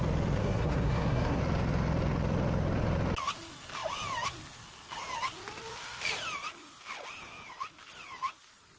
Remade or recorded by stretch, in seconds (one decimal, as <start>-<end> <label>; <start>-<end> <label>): 0.0-0.4 recorded; 0.4-1.4 remade; 1.4-8.8 recorded